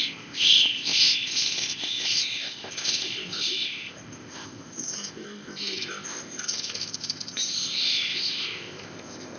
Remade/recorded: remade